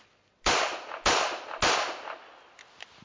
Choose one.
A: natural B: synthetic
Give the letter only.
A